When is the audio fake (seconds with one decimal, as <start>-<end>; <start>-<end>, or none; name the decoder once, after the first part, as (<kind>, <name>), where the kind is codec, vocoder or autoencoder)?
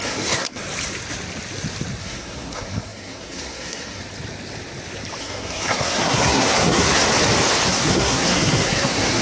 0.0-0.6 (codec, SNAC); 2.0-4.0; 5.2-7.0; 7.7-9.2